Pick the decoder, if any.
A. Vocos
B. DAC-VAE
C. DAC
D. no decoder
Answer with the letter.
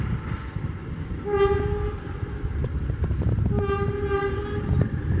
D